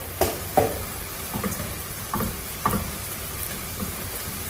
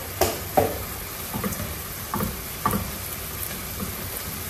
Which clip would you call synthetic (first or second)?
first